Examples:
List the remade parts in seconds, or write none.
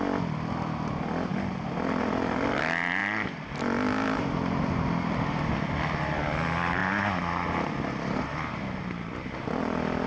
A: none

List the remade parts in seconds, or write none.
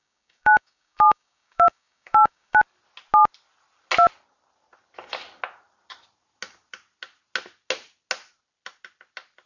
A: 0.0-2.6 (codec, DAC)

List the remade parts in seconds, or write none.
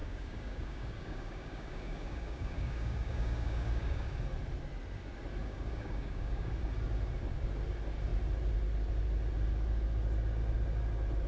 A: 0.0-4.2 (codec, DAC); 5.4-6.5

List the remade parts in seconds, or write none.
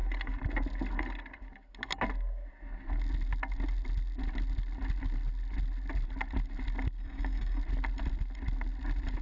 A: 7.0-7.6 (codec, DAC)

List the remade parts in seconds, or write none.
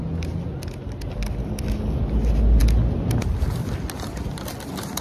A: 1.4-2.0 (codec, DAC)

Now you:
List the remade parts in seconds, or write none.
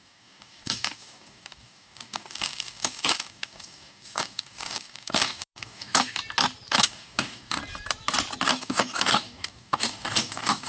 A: 0.0-6.2 (codec, DAC); 6.7-7.6; 8.5-10.7